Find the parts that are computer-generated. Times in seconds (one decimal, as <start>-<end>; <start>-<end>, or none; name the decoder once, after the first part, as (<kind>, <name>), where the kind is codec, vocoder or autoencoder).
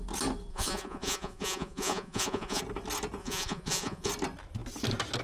0.5-2.6 (vocoder, Vocos); 3.2-4.1